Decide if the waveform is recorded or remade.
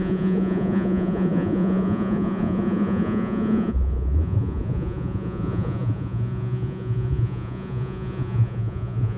remade